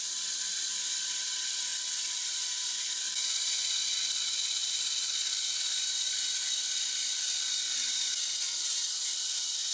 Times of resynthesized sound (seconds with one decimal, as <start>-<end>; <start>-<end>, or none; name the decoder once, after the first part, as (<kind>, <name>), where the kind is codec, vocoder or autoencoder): 0.0-4.6 (vocoder, BigVGAN v2); 5.6-9.7